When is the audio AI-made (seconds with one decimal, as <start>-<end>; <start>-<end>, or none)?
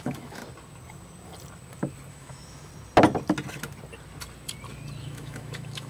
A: 0.0-0.4; 2.1-2.7; 5.0-5.9